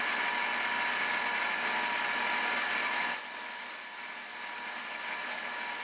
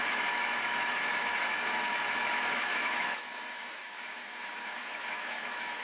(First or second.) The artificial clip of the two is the second